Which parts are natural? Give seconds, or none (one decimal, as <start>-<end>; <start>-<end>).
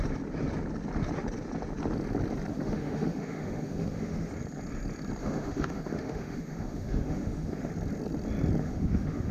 0.0-2.5; 4.3-5.2; 7.7-8.6